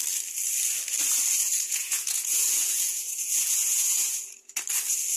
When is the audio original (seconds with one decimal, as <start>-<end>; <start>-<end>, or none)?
0.0-1.4; 4.5-5.2